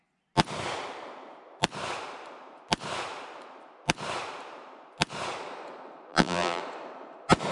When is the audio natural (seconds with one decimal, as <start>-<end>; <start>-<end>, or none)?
0.0-6.1; 6.6-7.5